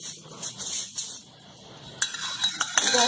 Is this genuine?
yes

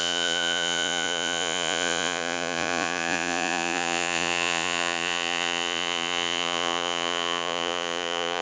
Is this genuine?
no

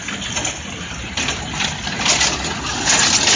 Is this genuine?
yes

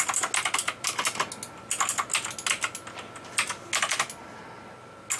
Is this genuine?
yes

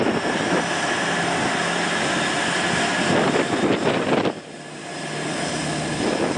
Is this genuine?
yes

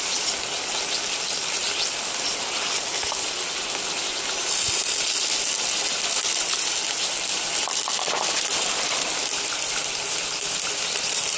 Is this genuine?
yes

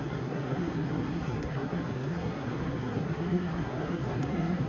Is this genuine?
no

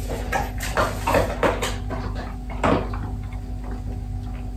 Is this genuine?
yes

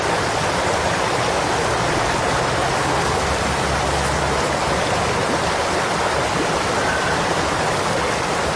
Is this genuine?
yes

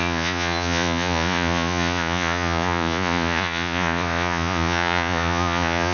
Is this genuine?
no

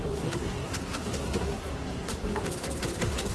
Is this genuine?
no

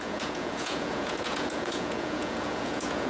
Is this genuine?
no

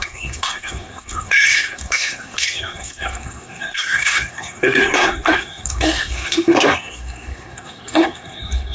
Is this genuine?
no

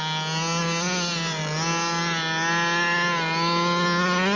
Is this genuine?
yes